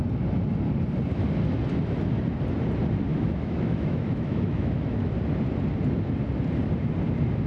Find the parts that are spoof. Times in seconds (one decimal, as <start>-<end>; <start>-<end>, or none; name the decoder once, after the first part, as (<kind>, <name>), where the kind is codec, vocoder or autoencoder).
3.1-5.1 (autoencoder, DAC-VAE)